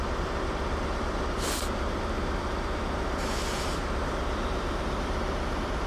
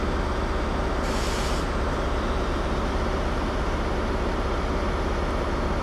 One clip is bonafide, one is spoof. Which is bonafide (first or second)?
second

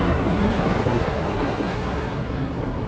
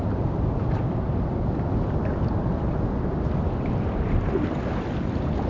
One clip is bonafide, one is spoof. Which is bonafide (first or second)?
second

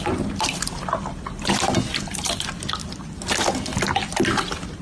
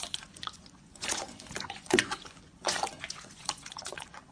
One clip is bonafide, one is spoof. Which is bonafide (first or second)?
first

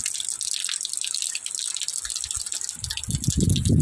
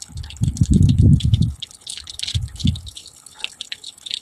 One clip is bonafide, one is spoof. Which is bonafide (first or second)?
first